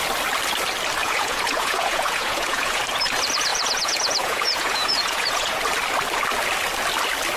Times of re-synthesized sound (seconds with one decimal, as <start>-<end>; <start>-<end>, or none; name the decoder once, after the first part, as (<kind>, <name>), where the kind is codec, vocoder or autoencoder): 1.0-2.8 (vocoder, Vocos); 3.5-5.6